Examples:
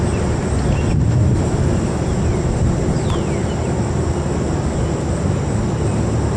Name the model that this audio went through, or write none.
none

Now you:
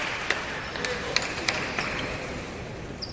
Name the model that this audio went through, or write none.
none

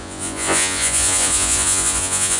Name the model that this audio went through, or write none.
vocoder, Vocos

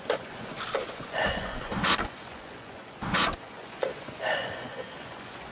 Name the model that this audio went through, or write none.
vocoder, Vocos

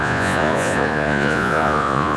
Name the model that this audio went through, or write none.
vocoder, Vocos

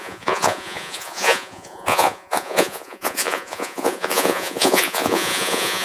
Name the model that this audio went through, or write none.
vocoder, Vocos